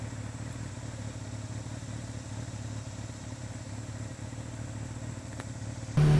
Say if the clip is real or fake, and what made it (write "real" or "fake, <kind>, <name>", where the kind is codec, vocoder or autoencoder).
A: real